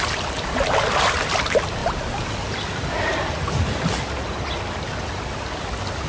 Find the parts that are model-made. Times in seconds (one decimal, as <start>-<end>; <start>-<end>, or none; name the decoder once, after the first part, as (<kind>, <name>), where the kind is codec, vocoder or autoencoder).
none